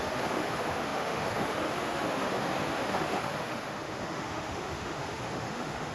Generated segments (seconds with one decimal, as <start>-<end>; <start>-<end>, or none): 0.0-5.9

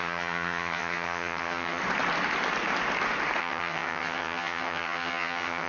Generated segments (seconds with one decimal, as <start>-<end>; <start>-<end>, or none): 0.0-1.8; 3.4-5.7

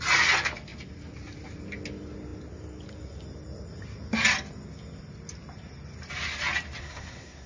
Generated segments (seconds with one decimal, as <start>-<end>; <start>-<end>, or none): 6.8-7.5